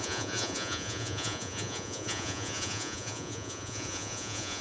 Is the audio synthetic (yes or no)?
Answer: yes